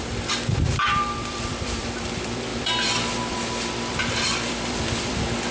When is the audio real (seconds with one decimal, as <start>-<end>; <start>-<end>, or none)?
none

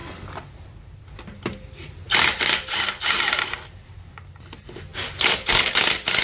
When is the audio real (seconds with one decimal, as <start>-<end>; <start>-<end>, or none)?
0.0-6.2

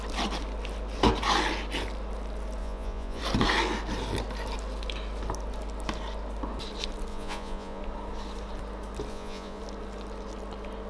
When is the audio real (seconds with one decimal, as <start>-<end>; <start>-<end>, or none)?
0.0-2.6; 3.2-7.1; 7.8-9.1; 9.6-10.9

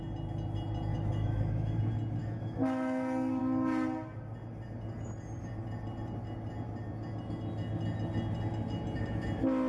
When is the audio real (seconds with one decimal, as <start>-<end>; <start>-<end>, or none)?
0.0-0.9; 1.8-2.2; 3.4-9.7

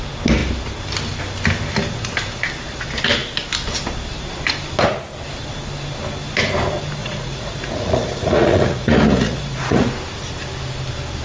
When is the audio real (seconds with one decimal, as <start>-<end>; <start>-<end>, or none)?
0.0-7.0; 9.9-11.2

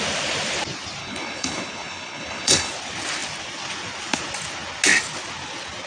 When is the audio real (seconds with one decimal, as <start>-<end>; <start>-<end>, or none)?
0.0-1.0; 2.7-5.9

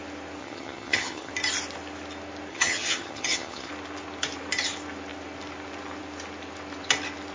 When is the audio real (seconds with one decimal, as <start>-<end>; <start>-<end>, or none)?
0.0-0.4; 1.3-2.5; 3.7-7.3